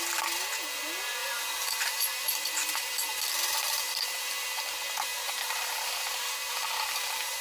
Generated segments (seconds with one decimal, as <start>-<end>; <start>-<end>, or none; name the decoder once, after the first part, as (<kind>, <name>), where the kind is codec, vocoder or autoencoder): 1.2-4.6 (vocoder, BigVGAN v2); 5.1-7.4